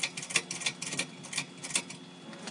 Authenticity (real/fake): real